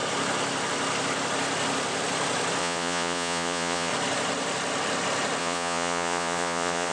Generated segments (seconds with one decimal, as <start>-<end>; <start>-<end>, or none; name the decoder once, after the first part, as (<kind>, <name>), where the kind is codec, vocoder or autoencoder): 2.6-3.9 (vocoder, Vocos); 5.4-6.9